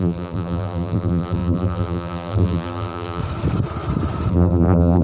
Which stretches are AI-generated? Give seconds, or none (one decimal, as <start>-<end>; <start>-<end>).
0.0-3.2; 4.3-5.0